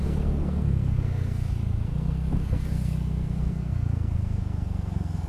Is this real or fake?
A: fake